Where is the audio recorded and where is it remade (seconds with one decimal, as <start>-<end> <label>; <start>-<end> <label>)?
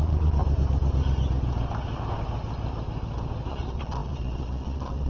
0.0-0.4 remade; 0.4-3.5 recorded; 3.5-5.1 remade